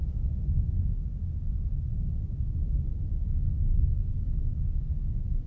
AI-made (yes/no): no